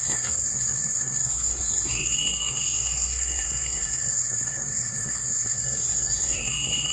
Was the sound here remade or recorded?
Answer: remade